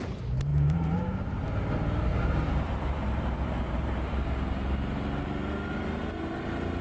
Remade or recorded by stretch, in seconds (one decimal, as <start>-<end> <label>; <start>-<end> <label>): 0.0-0.5 recorded; 0.5-1.4 remade; 1.4-2.1 recorded; 2.1-4.3 remade; 4.3-6.8 recorded